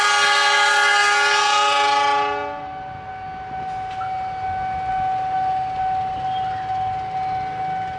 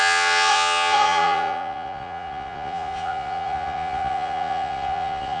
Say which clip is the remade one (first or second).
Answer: second